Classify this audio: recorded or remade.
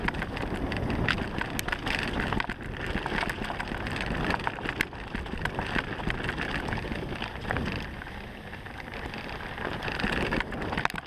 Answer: recorded